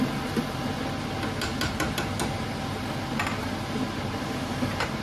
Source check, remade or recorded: recorded